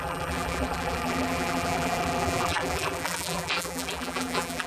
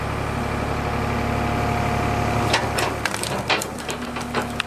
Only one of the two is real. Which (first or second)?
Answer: second